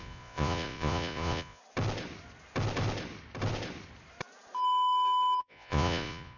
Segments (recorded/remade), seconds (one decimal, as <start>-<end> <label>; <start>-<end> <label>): 0.0-1.6 remade; 1.6-5.4 recorded; 5.4-6.4 remade